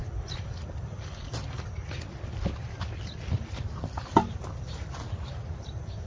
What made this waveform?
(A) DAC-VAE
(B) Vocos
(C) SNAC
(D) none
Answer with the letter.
D